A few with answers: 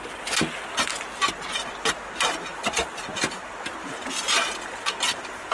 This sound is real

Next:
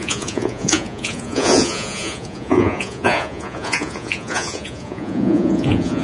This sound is fake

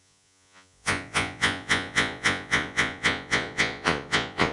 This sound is fake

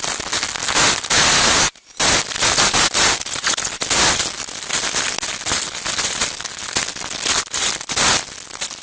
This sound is real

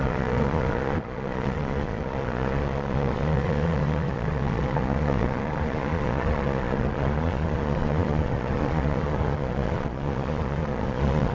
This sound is fake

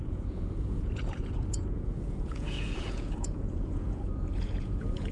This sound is fake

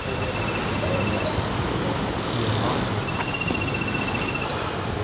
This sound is real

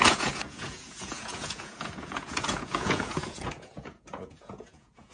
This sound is fake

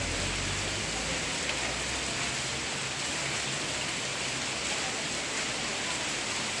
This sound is real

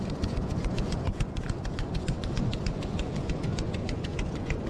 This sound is fake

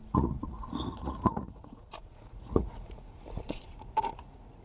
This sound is fake